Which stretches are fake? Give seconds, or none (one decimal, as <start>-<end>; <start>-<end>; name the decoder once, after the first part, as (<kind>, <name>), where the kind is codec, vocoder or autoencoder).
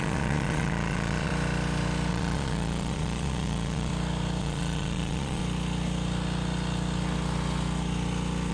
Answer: 0.0-1.3 (vocoder, Vocos); 2.1-3.9; 4.4-5.4